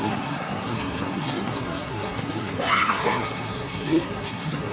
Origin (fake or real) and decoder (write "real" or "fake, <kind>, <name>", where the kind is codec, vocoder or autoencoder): fake, codec, SNAC